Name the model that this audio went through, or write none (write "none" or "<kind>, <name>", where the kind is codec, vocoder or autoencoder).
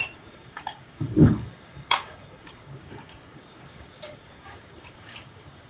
codec, DAC